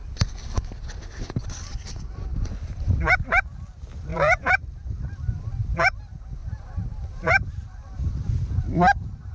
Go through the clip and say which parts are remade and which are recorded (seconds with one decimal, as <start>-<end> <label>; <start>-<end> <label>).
0.0-0.8 remade; 0.8-4.1 recorded; 4.1-5.0 remade; 5.0-6.4 recorded; 6.4-7.5 remade; 7.5-9.3 recorded